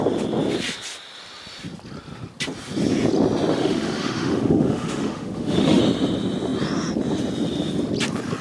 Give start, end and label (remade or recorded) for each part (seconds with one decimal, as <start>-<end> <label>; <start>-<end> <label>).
0.0-3.5 recorded; 3.5-5.8 remade; 5.8-8.4 recorded